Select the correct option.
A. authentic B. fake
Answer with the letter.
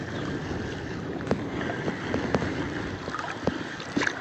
A